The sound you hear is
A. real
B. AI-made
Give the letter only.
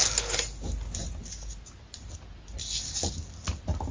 A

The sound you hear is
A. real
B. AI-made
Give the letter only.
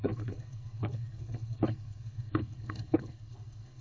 B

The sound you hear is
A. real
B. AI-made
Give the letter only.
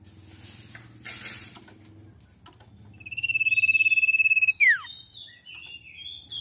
A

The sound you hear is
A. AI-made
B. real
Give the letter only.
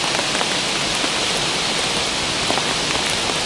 B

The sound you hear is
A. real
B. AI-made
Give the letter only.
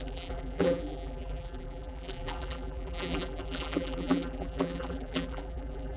B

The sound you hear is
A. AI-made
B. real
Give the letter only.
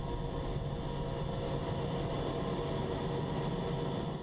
B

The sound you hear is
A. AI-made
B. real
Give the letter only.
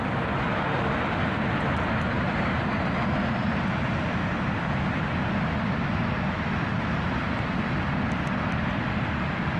B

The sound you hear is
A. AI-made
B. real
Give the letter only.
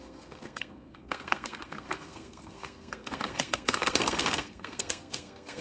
A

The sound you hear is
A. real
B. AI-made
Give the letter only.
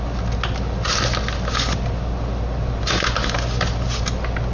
A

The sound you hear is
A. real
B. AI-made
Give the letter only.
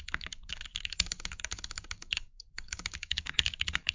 B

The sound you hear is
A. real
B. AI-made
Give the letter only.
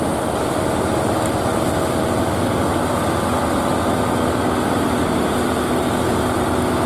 A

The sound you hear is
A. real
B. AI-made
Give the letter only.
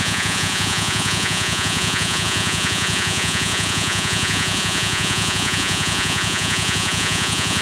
B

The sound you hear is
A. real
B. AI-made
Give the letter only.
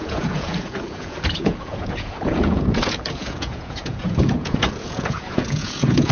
B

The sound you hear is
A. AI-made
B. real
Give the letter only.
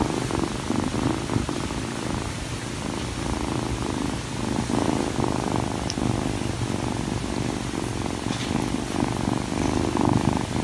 B